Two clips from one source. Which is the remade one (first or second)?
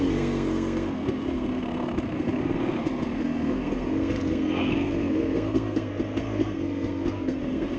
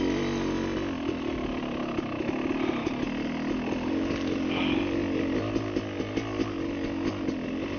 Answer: first